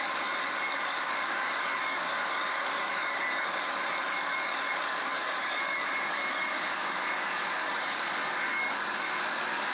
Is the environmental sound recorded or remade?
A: remade